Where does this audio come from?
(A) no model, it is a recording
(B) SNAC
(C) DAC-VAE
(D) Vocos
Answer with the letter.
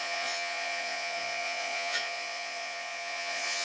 D